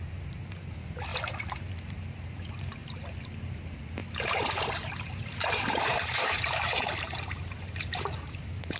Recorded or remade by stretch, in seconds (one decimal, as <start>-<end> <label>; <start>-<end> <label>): 0.0-1.1 remade; 1.1-1.7 recorded; 1.7-8.8 remade